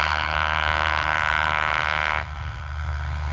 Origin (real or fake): fake